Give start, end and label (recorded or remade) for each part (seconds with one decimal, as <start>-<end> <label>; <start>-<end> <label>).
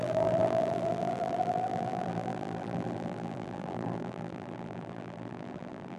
0.0-6.0 remade